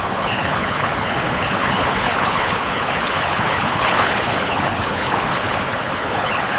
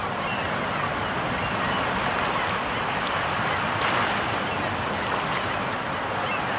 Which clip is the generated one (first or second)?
first